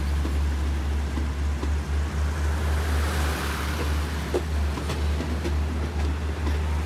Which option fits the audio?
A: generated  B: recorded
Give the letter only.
B